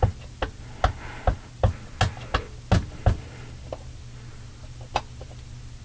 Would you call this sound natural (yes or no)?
yes